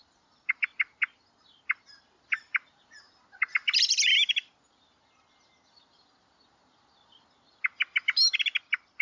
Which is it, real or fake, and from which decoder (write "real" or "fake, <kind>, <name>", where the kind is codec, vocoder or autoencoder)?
real